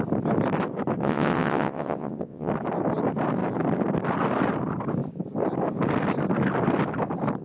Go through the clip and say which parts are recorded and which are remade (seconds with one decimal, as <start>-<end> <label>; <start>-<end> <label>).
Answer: 0.0-1.0 recorded; 1.0-2.5 remade; 2.5-7.4 recorded